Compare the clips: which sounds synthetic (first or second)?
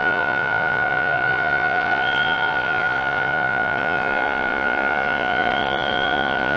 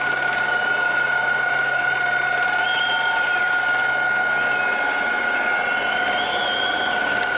first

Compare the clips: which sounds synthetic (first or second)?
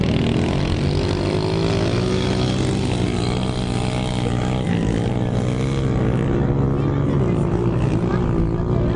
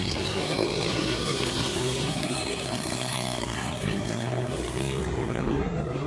second